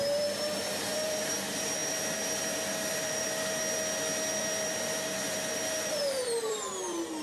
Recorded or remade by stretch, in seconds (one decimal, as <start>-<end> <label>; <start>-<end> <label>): 0.0-3.6 remade; 3.6-4.4 recorded; 4.4-7.2 remade